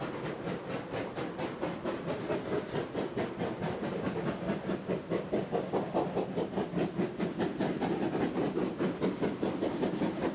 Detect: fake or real real